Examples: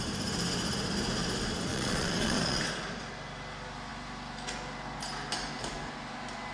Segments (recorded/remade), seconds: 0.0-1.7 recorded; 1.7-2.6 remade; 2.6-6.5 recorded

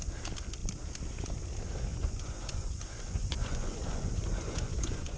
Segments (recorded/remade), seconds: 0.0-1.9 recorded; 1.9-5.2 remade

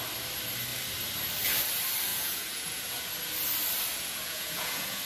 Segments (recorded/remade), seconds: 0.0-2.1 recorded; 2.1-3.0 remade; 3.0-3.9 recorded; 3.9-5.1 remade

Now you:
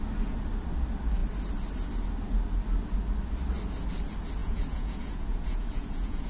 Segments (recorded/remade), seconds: 0.0-4.4 recorded; 4.4-6.3 remade

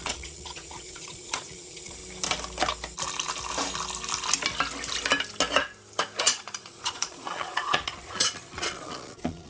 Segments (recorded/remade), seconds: 0.0-2.0 remade; 2.0-6.2 recorded; 6.2-9.5 remade

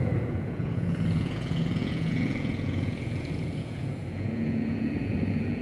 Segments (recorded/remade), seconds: 0.0-5.6 remade